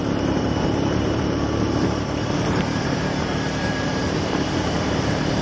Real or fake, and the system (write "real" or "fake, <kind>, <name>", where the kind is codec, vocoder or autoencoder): fake, vocoder, BigVGAN v2